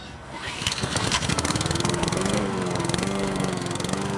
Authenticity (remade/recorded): remade